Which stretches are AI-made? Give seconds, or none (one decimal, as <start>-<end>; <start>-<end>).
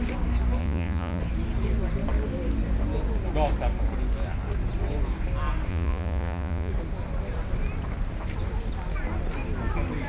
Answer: 0.6-1.2; 5.7-6.7